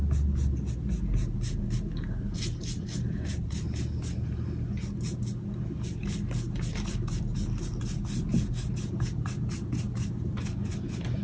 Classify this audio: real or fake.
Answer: real